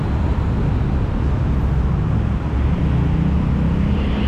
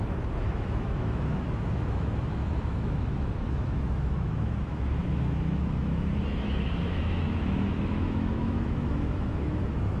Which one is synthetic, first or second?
second